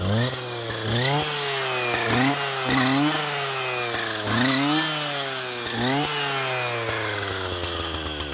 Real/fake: real